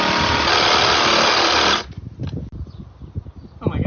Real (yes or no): yes